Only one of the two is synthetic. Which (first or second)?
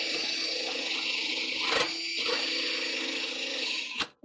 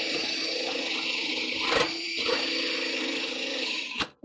second